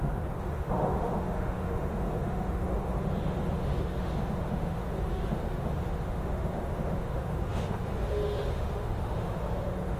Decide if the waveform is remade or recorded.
remade